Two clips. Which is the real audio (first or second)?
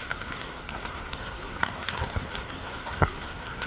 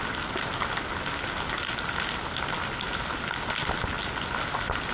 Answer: second